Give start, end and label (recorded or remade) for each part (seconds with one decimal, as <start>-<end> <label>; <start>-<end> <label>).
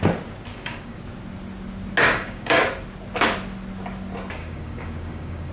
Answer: 0.0-0.5 recorded; 0.5-1.0 remade; 1.0-2.0 recorded; 2.0-2.7 remade; 2.7-4.4 recorded; 4.4-5.5 remade